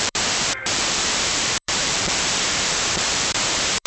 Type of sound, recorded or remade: remade